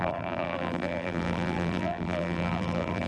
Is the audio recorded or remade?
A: remade